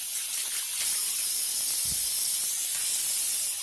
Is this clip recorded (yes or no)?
yes